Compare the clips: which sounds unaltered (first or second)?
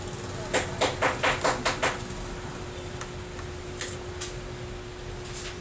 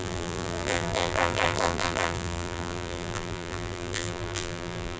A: first